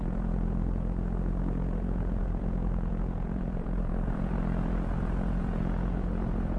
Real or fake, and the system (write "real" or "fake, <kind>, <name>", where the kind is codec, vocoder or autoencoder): fake, vocoder, Vocos